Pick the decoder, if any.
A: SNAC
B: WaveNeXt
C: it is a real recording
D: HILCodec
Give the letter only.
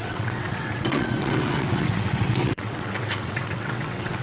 B